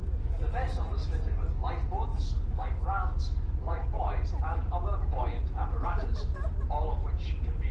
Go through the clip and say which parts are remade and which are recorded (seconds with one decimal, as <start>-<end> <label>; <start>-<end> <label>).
0.0-0.5 remade; 0.5-2.1 recorded; 2.1-3.2 remade; 3.2-7.7 recorded